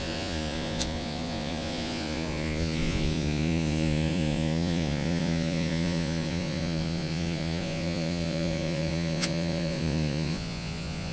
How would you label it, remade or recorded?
remade